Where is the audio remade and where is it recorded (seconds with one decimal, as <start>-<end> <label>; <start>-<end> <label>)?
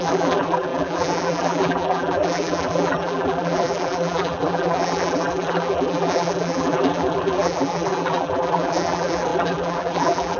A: 0.0-10.4 remade